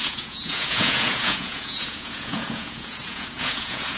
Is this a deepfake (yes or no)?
yes